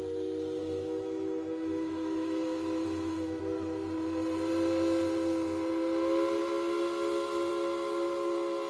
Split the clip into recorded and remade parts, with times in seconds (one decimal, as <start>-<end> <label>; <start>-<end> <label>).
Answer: 0.0-0.6 recorded; 0.6-3.4 remade; 3.4-8.7 recorded

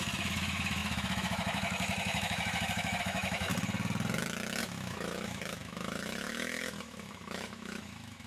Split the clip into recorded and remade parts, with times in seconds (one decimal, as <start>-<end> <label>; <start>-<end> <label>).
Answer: 0.0-3.5 remade; 3.5-4.6 recorded; 4.6-8.3 remade

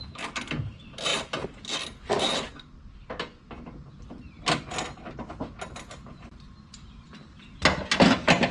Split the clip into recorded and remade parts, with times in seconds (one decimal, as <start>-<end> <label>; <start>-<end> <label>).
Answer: 0.0-8.5 recorded

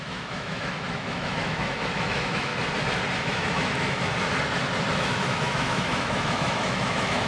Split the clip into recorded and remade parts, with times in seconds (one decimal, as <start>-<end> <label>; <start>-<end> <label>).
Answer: 0.0-2.5 remade; 2.5-3.2 recorded; 3.2-4.1 remade; 4.1-4.9 recorded; 4.9-7.3 remade

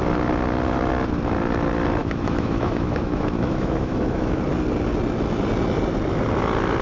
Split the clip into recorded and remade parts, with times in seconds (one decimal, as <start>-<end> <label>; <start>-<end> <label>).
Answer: 0.0-2.0 recorded; 2.0-4.4 remade; 4.4-6.8 recorded

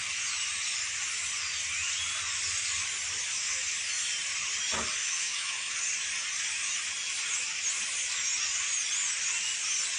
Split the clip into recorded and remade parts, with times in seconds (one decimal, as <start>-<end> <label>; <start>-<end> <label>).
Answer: 0.0-5.0 recorded; 5.0-5.7 remade; 5.7-10.0 recorded

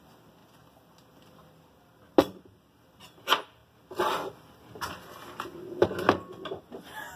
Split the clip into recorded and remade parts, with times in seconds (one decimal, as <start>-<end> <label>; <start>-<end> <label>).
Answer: 0.0-7.2 recorded

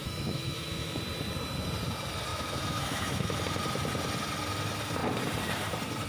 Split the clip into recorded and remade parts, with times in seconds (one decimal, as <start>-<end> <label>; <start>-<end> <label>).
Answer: 0.0-1.0 remade; 1.0-2.3 recorded; 2.3-3.4 remade; 3.4-6.1 recorded